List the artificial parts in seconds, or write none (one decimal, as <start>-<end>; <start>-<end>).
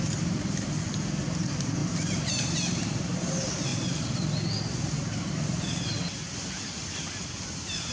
1.8-3.3; 3.7-6.9